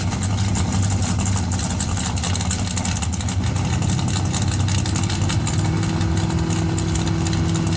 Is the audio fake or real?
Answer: real